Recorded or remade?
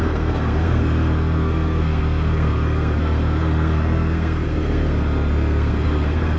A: remade